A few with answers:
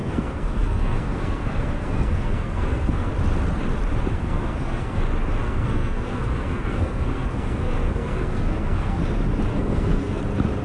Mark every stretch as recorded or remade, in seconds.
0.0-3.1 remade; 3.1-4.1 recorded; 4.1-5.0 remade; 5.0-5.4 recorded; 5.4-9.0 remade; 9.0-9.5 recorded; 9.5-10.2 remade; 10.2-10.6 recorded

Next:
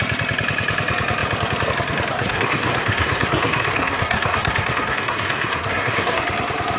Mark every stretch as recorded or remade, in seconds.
0.0-2.1 recorded; 2.1-6.2 remade; 6.2-6.8 recorded

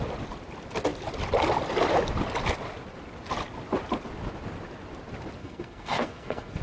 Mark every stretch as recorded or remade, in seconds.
0.0-5.4 recorded; 5.4-6.6 remade

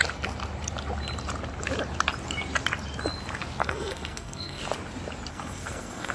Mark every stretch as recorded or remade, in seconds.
0.0-3.6 recorded; 3.6-4.6 remade; 4.6-5.3 recorded; 5.3-6.1 remade

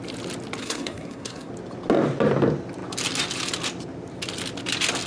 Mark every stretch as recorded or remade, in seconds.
0.0-0.6 recorded; 0.6-1.5 remade; 1.5-5.1 recorded

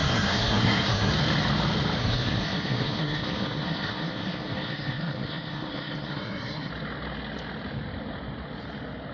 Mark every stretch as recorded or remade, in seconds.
0.0-1.1 remade; 1.1-2.0 recorded; 2.0-6.7 remade; 6.7-9.1 recorded

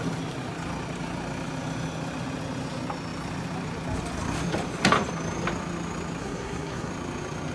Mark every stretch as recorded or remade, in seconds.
0.0-6.2 recorded; 6.2-6.9 remade; 6.9-7.5 recorded

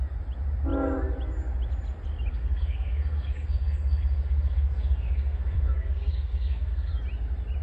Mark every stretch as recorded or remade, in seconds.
0.0-2.3 recorded; 2.3-6.9 remade; 6.9-7.6 recorded